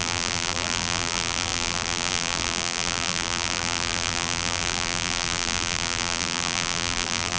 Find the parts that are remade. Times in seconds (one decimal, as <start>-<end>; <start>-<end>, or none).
0.0-7.4